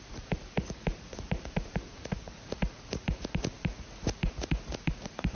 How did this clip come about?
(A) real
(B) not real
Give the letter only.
B